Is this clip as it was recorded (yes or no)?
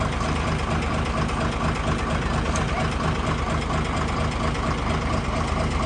yes